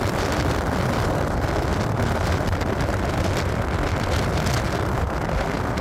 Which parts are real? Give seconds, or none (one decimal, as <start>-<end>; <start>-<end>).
0.0-5.8